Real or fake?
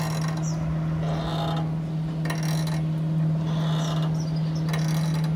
real